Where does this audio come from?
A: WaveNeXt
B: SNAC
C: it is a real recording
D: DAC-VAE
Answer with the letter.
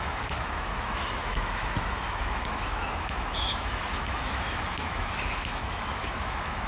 D